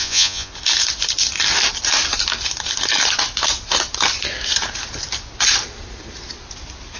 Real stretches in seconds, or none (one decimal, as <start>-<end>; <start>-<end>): 0.5-7.0